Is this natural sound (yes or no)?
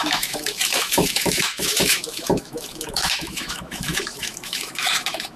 no